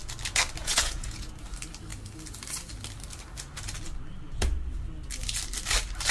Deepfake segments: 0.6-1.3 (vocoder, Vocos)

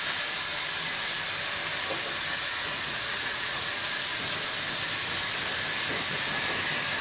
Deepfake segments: 2.3-3.7 (vocoder, Vocos)

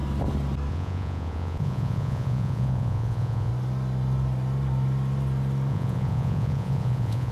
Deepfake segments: 0.7-3.5 (vocoder, Vocos); 5.7-7.3